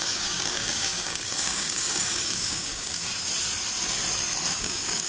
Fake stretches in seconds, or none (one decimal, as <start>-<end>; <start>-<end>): 0.0-3.1; 4.5-5.1

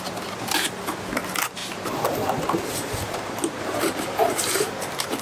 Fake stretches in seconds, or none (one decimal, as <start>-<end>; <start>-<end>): 1.6-4.7

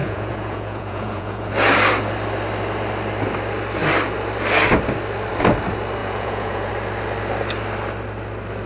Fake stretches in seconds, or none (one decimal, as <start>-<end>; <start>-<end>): 0.0-1.5; 6.0-6.7

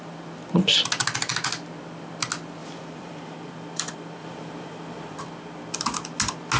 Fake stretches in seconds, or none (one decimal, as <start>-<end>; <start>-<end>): 2.6-3.5; 4.2-5.2

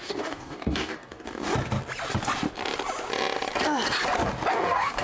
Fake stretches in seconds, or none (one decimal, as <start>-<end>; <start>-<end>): 0.0-1.5; 4.5-5.0